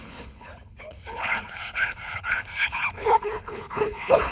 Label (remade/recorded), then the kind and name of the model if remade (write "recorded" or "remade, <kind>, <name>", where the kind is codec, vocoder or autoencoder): remade, codec, HILCodec